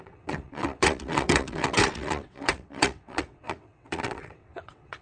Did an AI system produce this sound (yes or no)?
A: yes